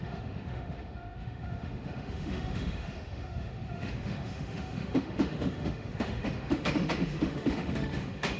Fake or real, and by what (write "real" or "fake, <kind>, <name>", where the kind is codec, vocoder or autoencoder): fake, autoencoder, DAC-VAE